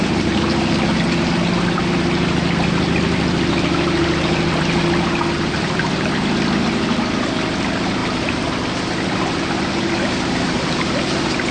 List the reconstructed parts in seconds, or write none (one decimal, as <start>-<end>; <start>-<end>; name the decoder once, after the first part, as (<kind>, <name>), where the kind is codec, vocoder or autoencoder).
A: none